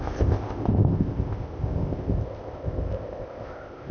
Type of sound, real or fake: fake